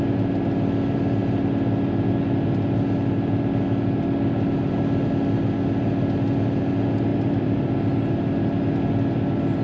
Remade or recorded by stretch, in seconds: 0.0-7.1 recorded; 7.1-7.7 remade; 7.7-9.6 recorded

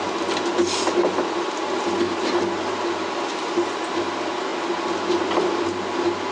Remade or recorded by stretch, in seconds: 0.0-6.3 recorded

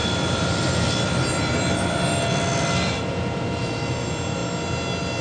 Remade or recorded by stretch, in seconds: 0.0-4.4 remade; 4.4-5.2 recorded

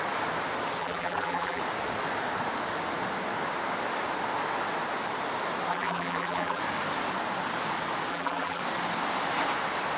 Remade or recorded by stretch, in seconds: 0.0-0.8 recorded; 0.8-1.6 remade; 1.6-5.7 recorded; 5.7-6.6 remade; 6.6-8.1 recorded; 8.1-8.6 remade; 8.6-10.0 recorded

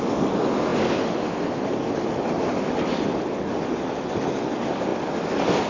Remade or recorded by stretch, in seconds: 0.0-4.9 recorded; 4.9-5.7 remade

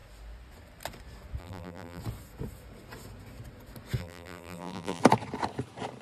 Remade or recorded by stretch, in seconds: 0.0-1.4 recorded; 1.4-2.0 remade; 2.0-4.0 recorded; 4.0-5.0 remade; 5.0-6.0 recorded